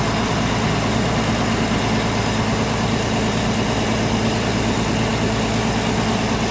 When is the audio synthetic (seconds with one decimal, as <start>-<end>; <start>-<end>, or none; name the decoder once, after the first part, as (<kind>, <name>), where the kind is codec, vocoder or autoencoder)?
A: none